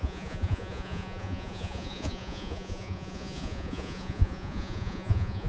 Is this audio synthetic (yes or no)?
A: yes